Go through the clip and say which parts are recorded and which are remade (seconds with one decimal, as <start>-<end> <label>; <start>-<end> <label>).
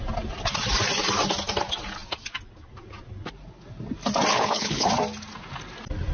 0.0-4.3 recorded; 4.3-4.9 remade; 4.9-6.1 recorded